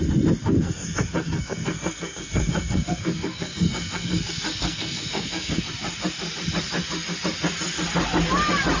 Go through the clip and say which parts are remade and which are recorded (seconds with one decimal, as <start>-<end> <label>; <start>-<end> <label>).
0.0-0.4 recorded; 0.4-5.6 remade; 5.6-8.8 recorded